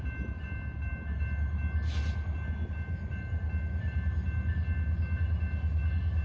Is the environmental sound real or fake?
real